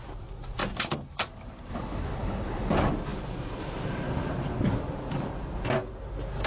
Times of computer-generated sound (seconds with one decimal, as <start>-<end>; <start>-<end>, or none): 1.7-2.7